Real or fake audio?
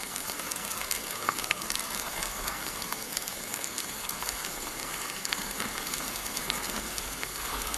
fake